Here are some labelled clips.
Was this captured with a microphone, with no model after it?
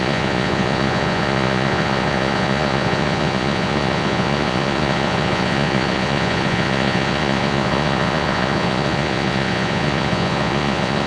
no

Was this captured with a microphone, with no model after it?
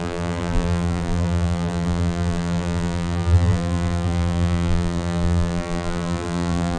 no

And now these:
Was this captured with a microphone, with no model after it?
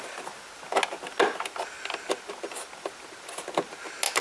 yes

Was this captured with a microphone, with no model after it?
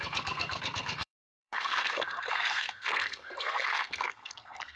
no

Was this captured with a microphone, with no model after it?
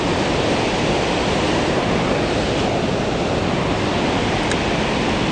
yes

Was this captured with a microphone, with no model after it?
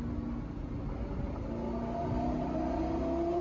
yes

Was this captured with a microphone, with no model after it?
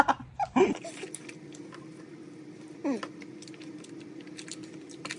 yes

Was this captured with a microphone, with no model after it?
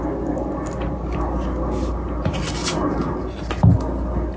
yes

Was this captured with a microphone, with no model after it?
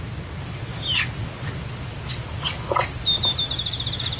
yes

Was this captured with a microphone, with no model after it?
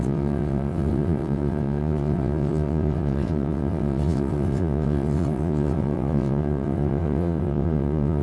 no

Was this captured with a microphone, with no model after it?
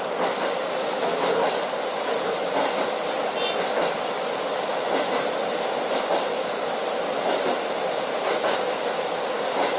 yes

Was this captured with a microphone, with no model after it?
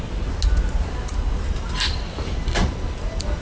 yes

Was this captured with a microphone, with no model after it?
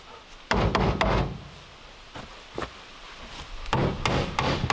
yes